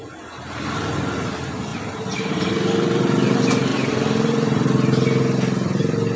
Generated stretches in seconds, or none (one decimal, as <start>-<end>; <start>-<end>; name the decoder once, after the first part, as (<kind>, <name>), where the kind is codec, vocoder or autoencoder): 1.7-3.0 (vocoder, BigVGAN v2); 3.7-5.8